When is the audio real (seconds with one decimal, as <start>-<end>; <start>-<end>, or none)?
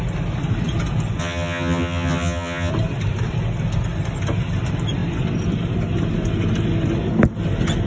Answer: 0.0-1.2; 2.7-7.9